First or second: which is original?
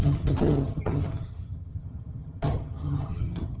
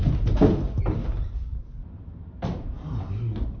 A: second